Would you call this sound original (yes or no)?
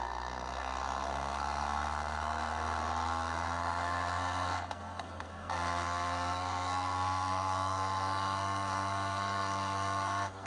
no